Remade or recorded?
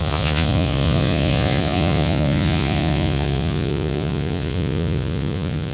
remade